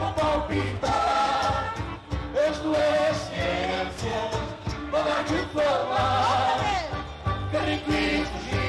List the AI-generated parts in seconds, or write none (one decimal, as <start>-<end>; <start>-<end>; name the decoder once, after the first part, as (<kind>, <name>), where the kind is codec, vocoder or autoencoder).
0.5-1.3 (codec, SNAC); 2.4-5.3